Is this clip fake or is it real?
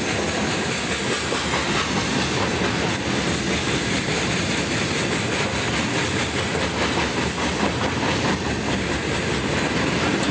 real